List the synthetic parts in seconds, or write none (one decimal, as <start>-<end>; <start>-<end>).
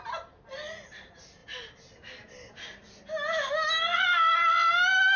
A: none